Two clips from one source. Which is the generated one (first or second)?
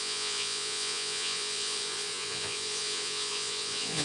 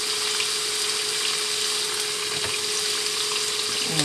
first